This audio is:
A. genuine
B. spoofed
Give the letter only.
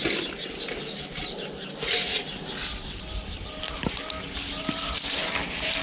A